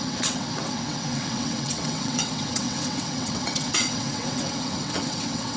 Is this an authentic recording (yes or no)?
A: no